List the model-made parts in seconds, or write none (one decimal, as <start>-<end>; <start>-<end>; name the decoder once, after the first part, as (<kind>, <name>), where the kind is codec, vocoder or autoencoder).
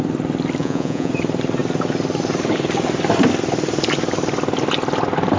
0.6-1.1 (vocoder, Vocos)